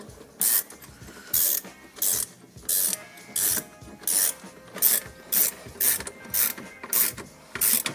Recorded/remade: recorded